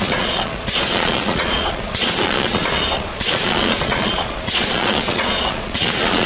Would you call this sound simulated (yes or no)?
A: yes